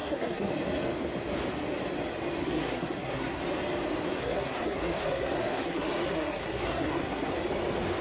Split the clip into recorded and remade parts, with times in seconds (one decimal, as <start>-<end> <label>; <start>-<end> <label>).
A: 0.0-0.5 remade; 0.5-2.4 recorded; 2.4-3.4 remade; 3.4-4.2 recorded; 4.2-7.3 remade; 7.3-8.0 recorded